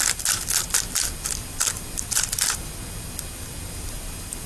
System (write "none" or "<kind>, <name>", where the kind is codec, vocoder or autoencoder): none